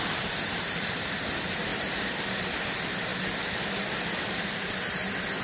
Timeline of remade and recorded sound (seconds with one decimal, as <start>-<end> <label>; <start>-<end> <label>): 0.0-5.4 recorded